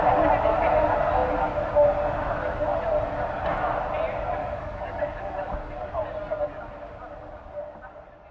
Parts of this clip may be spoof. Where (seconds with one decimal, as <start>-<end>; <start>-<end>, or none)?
4.4-5.9